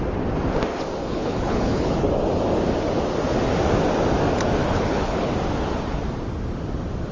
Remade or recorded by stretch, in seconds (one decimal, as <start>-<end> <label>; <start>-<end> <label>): 0.0-1.0 recorded; 1.0-2.1 remade; 2.1-4.6 recorded; 4.6-5.3 remade; 5.3-7.1 recorded